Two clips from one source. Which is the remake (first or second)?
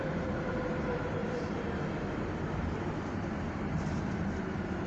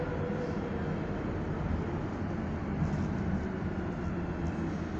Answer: first